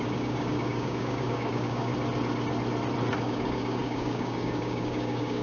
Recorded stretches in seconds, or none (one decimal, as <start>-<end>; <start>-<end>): 1.9-3.2